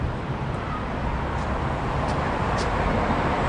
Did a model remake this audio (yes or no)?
yes